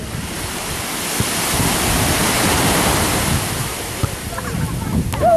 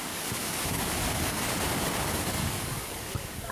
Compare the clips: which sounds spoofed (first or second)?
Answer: second